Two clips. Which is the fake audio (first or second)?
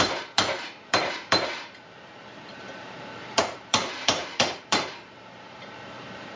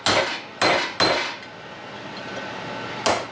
first